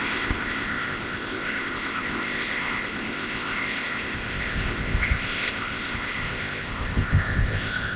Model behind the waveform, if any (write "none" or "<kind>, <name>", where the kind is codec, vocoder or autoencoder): codec, ZipCodec